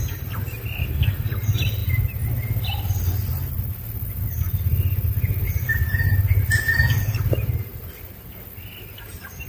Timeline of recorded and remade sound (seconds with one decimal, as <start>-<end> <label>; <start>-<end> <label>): 0.0-9.5 recorded